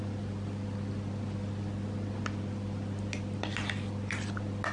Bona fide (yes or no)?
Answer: yes